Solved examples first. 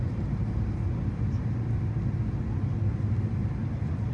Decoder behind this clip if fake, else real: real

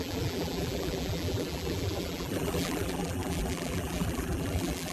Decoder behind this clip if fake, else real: fake, vocoder, BigVGAN v2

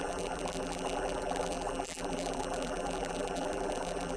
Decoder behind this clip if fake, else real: fake, vocoder, BigVGAN v2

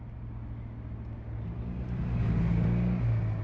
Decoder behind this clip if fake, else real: real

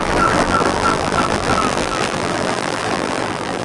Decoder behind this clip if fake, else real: fake, vocoder, BigVGAN v2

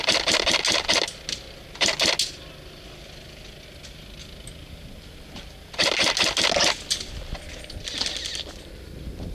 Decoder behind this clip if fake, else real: real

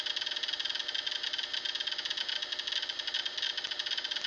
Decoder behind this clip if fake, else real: real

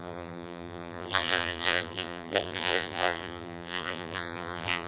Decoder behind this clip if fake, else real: fake, vocoder, BigVGAN v2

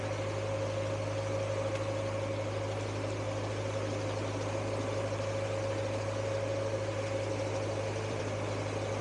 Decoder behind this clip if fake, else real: fake, vocoder, BigVGAN v2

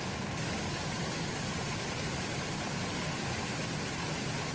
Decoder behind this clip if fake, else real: fake, vocoder, BigVGAN v2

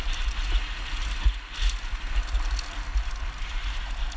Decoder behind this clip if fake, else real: real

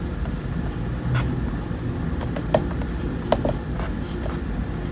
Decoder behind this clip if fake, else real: real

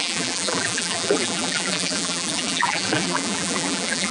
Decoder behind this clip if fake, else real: fake, vocoder, BigVGAN v2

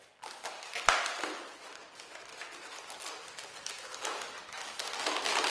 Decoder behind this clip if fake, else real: real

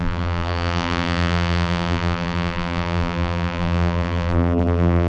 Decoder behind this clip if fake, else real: fake, vocoder, BigVGAN v2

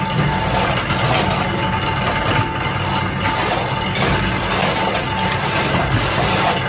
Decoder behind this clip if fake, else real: real